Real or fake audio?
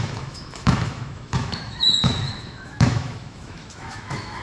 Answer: fake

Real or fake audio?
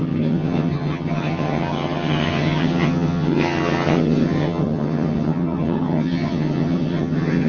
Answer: fake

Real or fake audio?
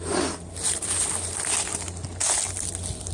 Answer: real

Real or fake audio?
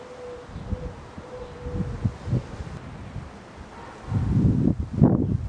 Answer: real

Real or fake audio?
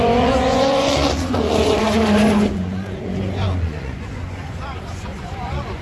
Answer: fake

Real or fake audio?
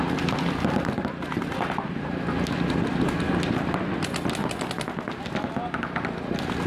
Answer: real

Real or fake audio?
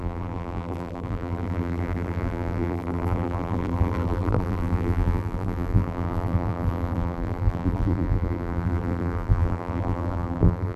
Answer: fake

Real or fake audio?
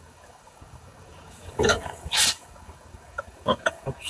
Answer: fake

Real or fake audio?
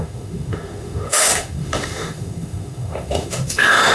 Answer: fake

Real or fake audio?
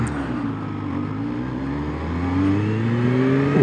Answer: real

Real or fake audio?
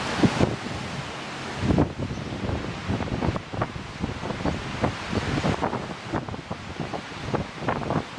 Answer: real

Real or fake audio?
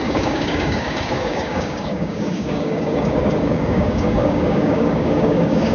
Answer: fake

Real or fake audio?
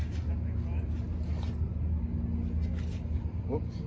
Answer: real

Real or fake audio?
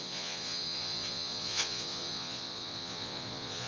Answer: fake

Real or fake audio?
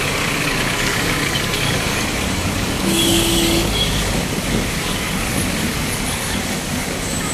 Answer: fake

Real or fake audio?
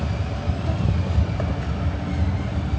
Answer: real